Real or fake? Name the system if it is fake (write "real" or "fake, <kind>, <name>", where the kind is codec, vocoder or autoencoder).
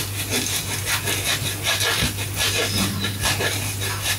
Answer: real